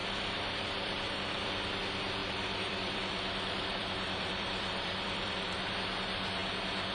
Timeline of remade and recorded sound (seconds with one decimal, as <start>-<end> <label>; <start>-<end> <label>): 0.0-1.8 remade; 1.8-2.2 recorded; 2.2-5.7 remade; 5.7-6.9 recorded